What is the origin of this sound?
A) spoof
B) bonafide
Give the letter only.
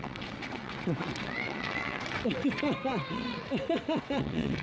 A